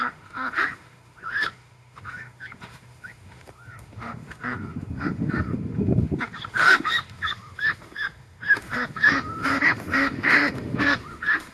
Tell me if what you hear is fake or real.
fake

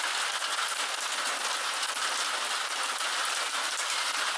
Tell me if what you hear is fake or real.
real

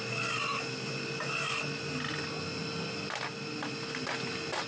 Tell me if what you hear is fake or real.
real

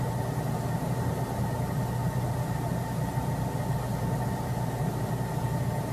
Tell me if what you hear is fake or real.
real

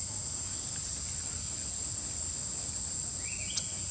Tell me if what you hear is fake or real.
real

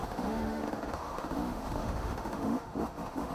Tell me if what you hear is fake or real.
fake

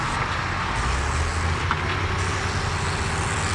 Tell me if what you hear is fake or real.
real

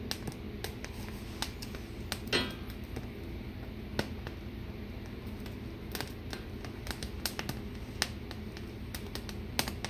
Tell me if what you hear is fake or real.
real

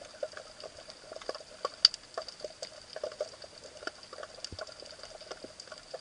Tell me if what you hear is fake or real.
real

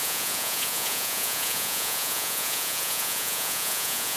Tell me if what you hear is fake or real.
fake